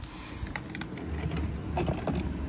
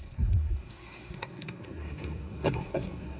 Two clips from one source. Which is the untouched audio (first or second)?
first